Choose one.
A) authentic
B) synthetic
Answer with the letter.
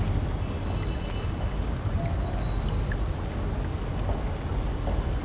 A